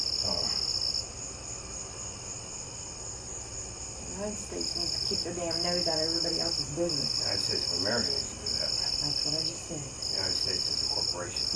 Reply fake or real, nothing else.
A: real